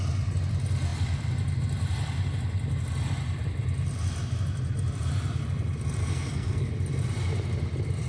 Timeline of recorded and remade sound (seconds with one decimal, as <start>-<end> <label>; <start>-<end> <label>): 0.0-6.0 recorded; 6.0-6.7 remade; 6.7-8.1 recorded